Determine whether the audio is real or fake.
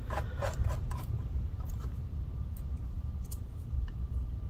fake